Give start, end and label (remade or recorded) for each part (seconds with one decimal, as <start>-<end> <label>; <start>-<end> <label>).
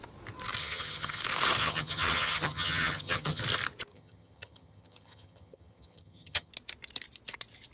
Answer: 0.0-0.6 recorded; 0.6-1.2 remade; 1.2-1.6 recorded; 1.6-3.4 remade; 3.4-3.9 recorded; 3.9-6.5 remade; 6.5-7.7 recorded